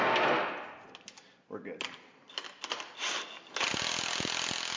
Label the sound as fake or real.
real